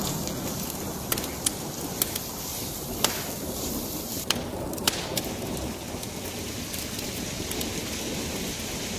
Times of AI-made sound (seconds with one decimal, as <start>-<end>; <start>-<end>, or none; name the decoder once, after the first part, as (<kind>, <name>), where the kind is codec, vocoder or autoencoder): 2.5-7.2 (vocoder, BigVGAN v2)